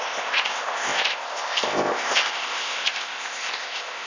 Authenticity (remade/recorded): remade